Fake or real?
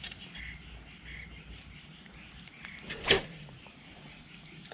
real